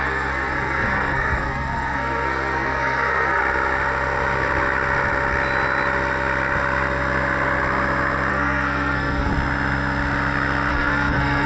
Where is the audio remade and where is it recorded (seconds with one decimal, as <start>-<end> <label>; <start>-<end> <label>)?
0.0-3.4 remade; 3.4-8.3 recorded; 8.3-9.3 remade; 9.3-10.7 recorded; 10.7-11.5 remade